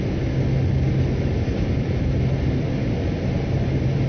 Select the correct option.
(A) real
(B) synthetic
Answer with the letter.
A